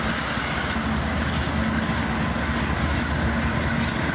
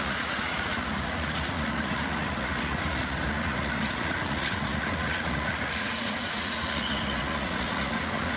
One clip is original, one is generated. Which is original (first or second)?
first